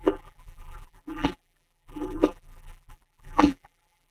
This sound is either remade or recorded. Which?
remade